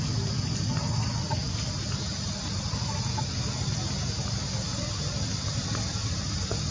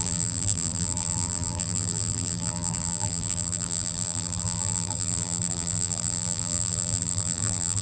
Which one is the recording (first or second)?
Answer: first